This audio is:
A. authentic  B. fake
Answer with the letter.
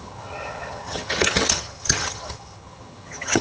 B